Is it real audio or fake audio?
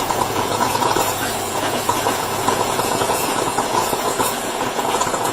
fake